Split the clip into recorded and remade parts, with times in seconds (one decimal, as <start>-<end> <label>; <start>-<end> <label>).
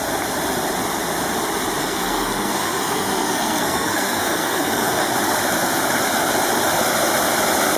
0.0-1.8 recorded; 1.8-5.1 remade; 5.1-7.8 recorded